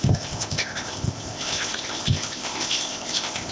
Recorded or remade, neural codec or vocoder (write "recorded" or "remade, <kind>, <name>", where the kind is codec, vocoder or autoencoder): remade, codec, ZipCodec